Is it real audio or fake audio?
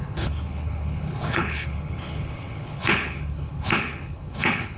fake